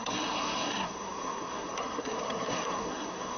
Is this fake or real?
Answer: fake